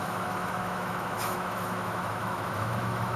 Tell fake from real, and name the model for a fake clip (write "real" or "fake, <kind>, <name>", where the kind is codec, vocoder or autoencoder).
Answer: fake, autoencoder, DAC-VAE